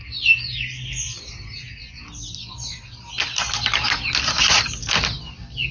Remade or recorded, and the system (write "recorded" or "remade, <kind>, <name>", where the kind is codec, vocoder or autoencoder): recorded